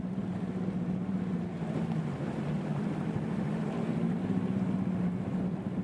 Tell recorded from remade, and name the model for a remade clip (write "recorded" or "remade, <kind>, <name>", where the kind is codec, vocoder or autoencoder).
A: recorded